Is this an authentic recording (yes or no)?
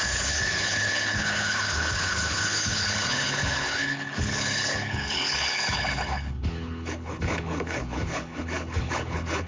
no